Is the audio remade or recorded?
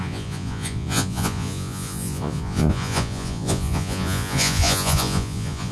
remade